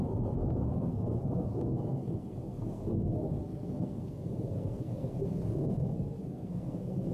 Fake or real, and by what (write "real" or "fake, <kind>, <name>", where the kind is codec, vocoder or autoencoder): fake, codec, SNAC